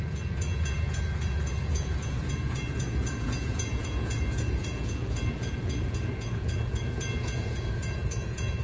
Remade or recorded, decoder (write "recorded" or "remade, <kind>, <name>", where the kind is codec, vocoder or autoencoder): remade, vocoder, Vocos